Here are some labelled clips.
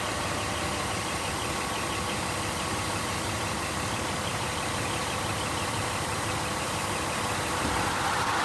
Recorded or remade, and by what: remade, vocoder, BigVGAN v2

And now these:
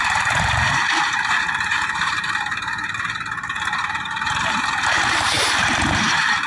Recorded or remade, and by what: remade, vocoder, BigVGAN v2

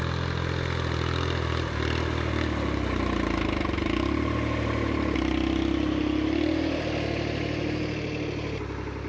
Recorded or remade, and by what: recorded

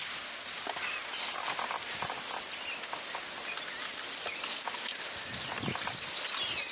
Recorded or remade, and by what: recorded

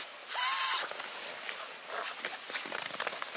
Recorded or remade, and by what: recorded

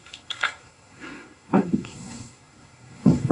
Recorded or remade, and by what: remade, codec, SNAC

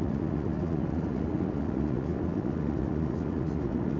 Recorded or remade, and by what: remade, vocoder, Vocos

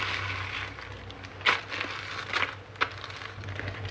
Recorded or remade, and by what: recorded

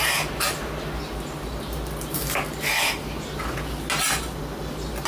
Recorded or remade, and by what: recorded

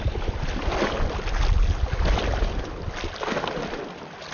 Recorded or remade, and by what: recorded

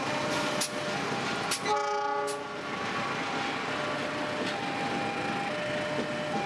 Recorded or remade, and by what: recorded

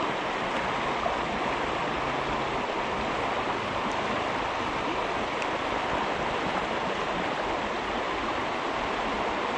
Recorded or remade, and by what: recorded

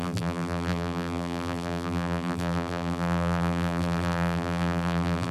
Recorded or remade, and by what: remade, vocoder, BigVGAN v2